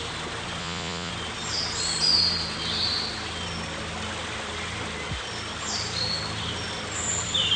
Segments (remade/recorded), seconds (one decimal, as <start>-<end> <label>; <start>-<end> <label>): 0.0-0.6 recorded; 0.6-1.1 remade; 1.1-7.6 recorded